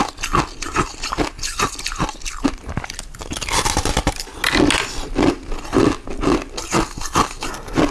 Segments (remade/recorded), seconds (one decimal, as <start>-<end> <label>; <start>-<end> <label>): 0.0-2.1 recorded; 2.1-2.6 remade; 2.6-7.9 recorded